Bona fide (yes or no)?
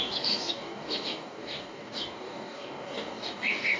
no